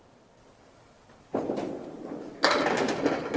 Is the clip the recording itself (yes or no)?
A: yes